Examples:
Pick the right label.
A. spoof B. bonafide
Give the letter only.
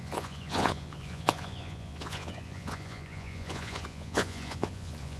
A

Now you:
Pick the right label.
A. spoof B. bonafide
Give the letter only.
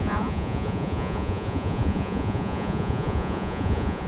A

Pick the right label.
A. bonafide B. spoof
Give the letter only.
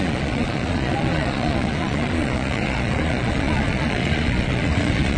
B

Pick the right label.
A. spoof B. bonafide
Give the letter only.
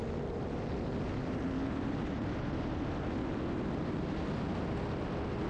B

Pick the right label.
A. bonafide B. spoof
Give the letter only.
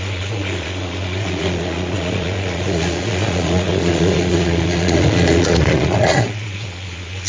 B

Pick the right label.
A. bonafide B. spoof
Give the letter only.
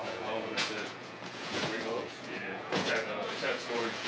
B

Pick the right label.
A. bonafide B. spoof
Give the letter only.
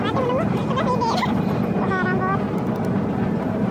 A